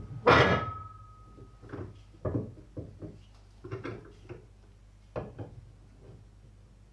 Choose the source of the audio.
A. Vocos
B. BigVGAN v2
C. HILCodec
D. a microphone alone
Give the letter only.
D